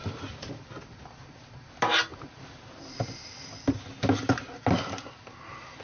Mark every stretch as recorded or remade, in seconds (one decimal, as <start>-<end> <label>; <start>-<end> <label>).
0.0-5.8 recorded